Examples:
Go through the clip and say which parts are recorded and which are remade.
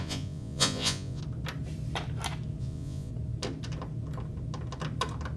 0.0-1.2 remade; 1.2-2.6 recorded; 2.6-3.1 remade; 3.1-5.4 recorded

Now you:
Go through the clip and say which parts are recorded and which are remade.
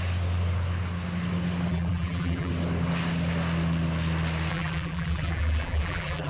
0.0-1.7 recorded; 1.7-2.5 remade; 2.5-4.5 recorded; 4.5-6.3 remade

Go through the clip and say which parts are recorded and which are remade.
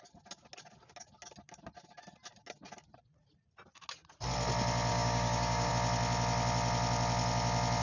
0.0-4.9 recorded; 4.9-5.7 remade; 5.7-7.8 recorded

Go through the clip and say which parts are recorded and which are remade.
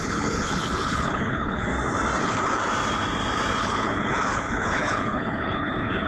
0.0-1.7 remade; 1.7-2.2 recorded; 2.2-2.6 remade; 2.6-3.6 recorded; 3.6-6.1 remade